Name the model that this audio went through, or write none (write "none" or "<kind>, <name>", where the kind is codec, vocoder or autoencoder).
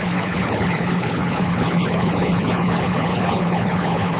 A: codec, HILCodec